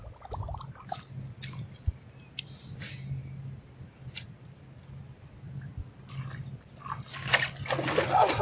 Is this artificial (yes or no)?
no